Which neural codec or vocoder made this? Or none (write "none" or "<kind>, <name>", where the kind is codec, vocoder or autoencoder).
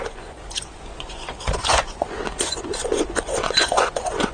vocoder, Vocos